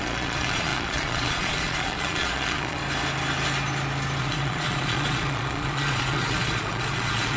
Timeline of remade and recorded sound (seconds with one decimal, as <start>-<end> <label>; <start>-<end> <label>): 0.0-2.8 remade; 2.8-4.2 recorded; 4.2-7.4 remade